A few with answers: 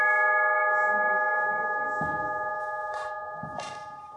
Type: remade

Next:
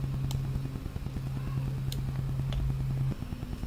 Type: recorded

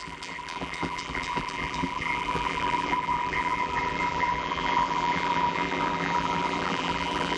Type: remade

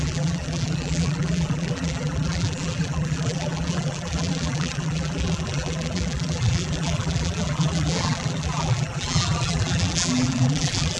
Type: remade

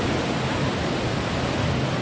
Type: recorded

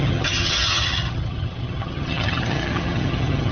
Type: remade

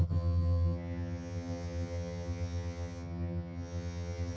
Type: remade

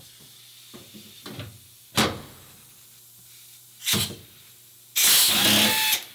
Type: recorded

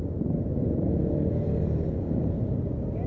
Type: recorded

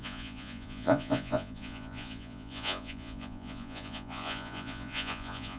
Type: remade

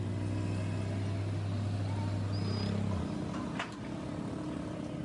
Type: recorded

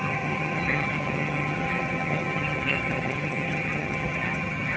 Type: remade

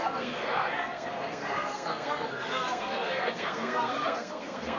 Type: remade